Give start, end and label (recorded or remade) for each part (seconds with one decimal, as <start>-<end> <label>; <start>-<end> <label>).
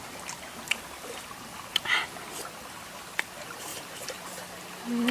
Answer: 0.0-5.1 recorded